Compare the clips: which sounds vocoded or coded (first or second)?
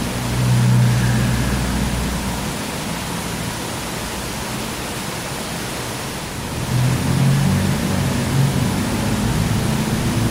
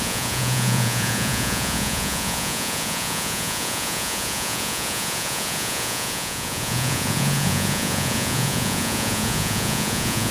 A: second